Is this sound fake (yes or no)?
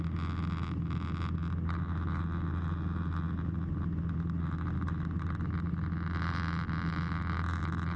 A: no